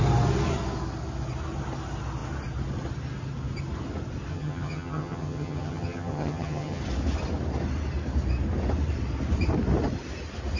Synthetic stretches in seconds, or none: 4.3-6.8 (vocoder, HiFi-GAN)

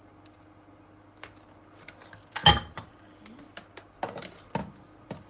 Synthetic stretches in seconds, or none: none

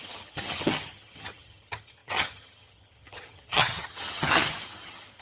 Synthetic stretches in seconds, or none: 0.0-5.2 (vocoder, HiFi-GAN)